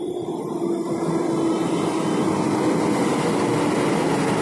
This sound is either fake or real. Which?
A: real